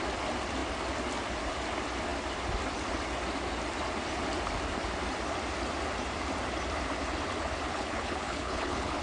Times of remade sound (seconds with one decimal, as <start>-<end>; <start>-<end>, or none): 7.7-9.0